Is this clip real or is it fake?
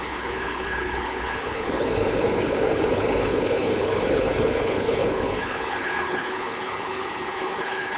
fake